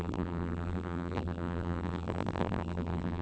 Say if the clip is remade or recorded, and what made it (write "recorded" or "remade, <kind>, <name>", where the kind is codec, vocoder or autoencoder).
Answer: remade, vocoder, BigVGAN v2